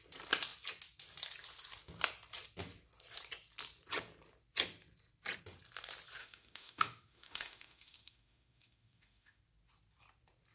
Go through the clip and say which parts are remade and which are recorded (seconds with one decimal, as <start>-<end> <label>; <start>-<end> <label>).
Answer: 0.0-6.2 recorded; 6.2-9.4 remade; 9.4-10.5 recorded

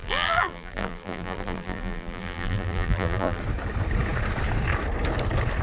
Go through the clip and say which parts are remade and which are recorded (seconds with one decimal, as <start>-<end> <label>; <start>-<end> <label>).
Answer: 0.0-3.4 remade; 3.4-5.6 recorded

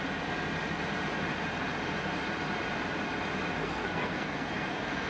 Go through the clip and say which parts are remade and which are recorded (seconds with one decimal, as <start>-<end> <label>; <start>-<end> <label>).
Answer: 0.0-3.6 recorded; 3.6-5.1 remade